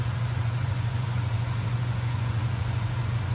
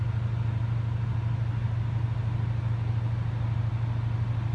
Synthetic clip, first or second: first